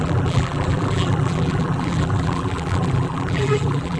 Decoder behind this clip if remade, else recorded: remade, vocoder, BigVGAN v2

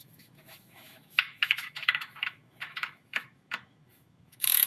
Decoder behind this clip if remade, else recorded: remade, autoencoder, DAC-VAE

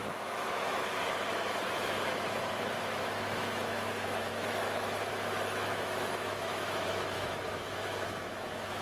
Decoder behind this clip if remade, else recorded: remade, autoencoder, DAC-VAE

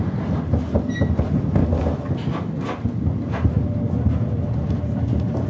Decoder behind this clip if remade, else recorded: recorded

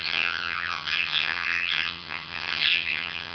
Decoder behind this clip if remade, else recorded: remade, vocoder, HiFi-GAN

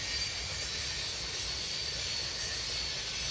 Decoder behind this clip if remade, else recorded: recorded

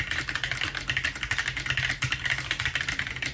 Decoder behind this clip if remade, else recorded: recorded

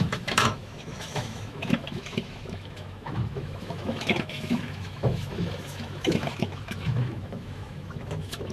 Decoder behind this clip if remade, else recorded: remade, autoencoder, DAC-VAE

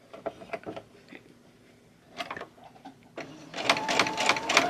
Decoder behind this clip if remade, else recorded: recorded